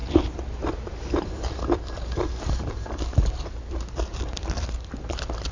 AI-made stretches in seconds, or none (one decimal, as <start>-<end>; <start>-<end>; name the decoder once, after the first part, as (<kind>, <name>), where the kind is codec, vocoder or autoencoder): 0.0-5.5 (vocoder, BigVGAN v2)